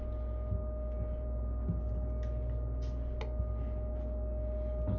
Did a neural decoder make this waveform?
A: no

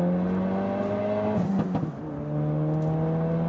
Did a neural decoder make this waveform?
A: no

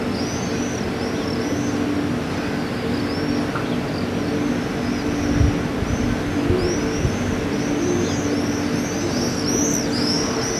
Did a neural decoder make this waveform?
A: no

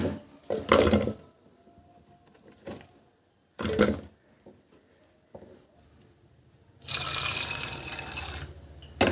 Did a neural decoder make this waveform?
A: no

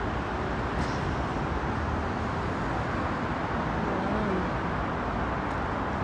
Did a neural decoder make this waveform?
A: no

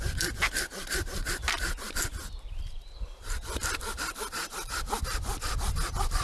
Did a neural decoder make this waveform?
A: no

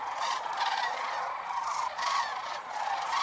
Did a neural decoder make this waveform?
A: yes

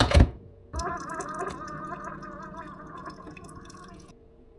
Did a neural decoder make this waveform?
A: yes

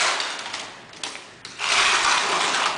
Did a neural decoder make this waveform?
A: no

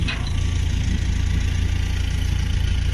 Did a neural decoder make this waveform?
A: no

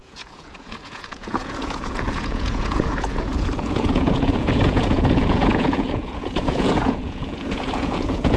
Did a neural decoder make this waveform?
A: yes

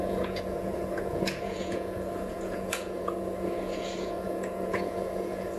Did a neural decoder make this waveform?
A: yes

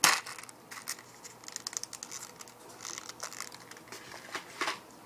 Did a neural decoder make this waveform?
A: no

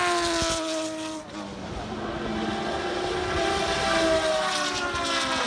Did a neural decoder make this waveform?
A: no